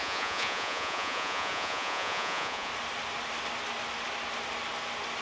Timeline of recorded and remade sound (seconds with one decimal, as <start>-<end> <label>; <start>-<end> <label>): 0.0-2.7 remade; 2.7-5.2 recorded